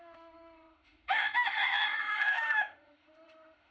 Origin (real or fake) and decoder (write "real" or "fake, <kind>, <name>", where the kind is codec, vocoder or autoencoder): fake, autoencoder, DAC-VAE